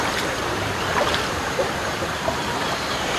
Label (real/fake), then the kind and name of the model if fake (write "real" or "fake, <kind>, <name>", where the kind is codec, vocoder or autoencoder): fake, vocoder, BigVGAN v2